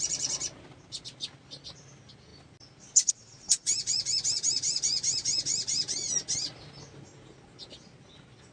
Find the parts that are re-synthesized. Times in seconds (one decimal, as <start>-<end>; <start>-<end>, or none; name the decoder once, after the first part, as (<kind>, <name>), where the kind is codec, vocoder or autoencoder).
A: none